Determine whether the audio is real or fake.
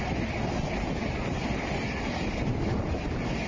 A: real